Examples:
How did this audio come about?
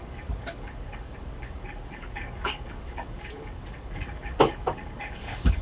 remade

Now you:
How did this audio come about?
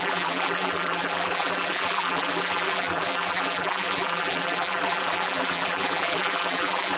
remade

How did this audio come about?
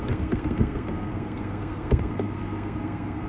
remade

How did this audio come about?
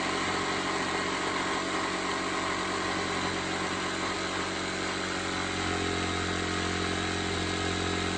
recorded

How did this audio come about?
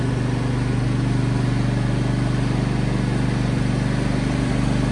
recorded